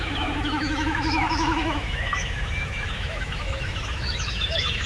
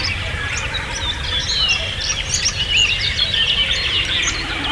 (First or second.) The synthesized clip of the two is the first